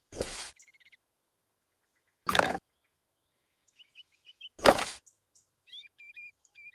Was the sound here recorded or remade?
remade